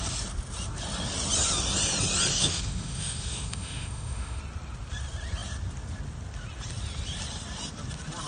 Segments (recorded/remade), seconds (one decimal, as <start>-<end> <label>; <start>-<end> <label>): 0.0-2.3 recorded; 2.3-4.4 remade; 4.4-8.3 recorded